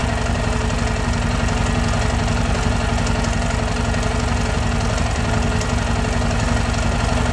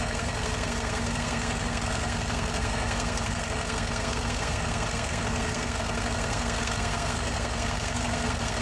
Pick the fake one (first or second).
second